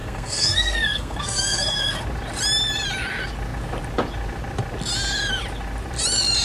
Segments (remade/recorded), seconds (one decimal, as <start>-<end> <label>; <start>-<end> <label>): 0.0-2.0 remade; 2.0-6.4 recorded